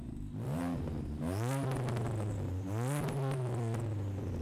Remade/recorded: remade